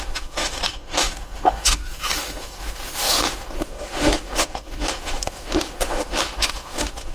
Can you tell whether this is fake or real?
fake